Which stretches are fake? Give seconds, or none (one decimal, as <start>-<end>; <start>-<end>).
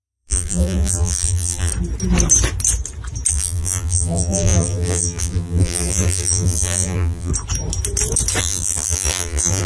0.0-1.7; 3.3-7.3; 8.4-9.7